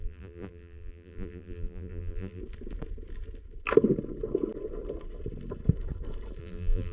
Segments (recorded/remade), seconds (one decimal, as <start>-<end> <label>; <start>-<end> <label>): 0.0-2.4 remade; 2.4-6.4 recorded; 6.4-6.9 remade